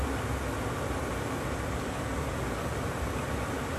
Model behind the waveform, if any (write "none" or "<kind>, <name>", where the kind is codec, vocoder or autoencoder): none